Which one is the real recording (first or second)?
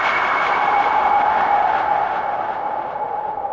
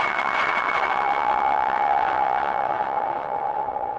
first